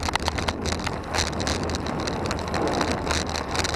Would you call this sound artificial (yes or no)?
no